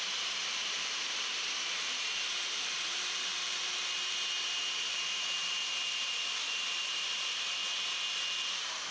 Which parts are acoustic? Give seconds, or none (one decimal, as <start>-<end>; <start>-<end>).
7.6-8.5

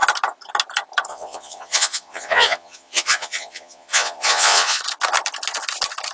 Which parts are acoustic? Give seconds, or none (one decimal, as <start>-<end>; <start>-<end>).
0.0-1.1; 4.8-6.1

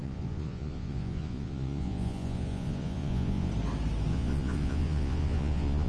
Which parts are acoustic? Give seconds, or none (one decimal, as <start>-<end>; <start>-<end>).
3.5-4.1

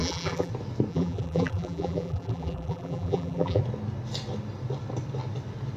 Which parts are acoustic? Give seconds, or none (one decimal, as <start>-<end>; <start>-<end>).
0.5-0.9; 3.6-5.8